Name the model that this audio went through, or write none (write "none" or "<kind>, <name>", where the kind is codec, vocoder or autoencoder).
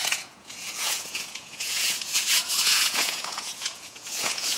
vocoder, Vocos